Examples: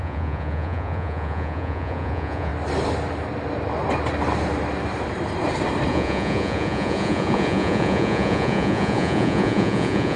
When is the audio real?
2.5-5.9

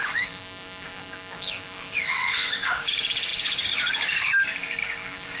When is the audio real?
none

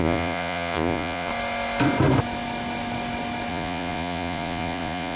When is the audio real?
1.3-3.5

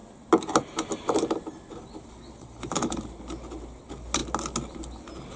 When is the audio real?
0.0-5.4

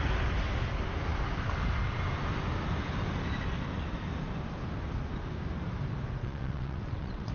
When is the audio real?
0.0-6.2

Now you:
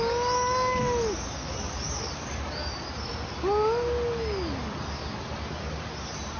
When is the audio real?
0.0-6.4

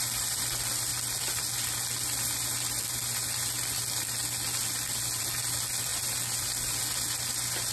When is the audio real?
0.0-7.7